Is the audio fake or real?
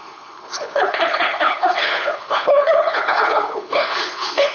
fake